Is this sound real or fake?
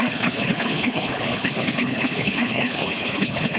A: fake